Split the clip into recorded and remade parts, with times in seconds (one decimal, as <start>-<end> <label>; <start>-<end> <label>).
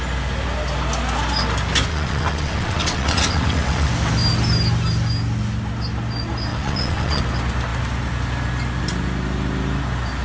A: 0.0-1.9 recorded; 1.9-3.9 remade; 3.9-6.5 recorded; 6.5-7.2 remade; 7.2-10.2 recorded